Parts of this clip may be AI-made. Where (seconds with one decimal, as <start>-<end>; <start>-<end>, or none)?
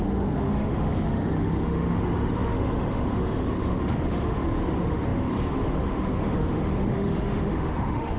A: 0.0-8.2